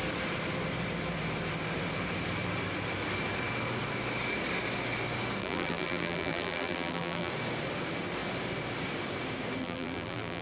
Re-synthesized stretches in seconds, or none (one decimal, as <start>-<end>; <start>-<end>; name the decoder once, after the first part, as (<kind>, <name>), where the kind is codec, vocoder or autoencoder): 5.4-7.3 (vocoder, BigVGAN v2); 9.6-10.4